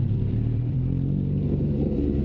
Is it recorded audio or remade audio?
remade